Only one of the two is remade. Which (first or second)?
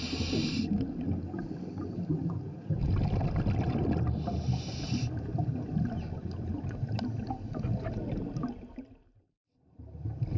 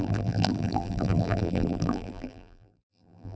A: second